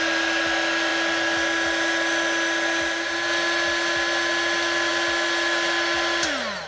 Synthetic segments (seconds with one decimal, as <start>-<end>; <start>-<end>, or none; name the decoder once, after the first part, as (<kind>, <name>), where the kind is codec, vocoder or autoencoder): none